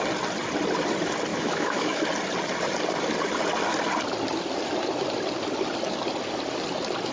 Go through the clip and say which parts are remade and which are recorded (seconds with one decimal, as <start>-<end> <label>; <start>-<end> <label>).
0.0-1.3 recorded; 1.3-2.0 remade; 2.0-7.1 recorded